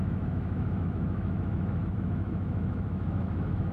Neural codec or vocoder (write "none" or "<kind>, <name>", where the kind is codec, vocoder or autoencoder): autoencoder, DAC-VAE